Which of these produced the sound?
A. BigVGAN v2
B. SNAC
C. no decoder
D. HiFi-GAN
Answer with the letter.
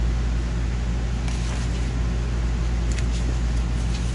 C